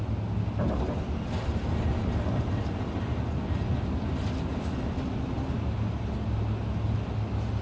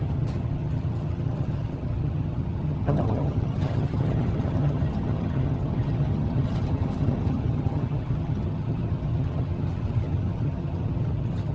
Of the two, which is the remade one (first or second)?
second